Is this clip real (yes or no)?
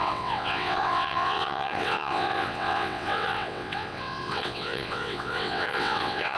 no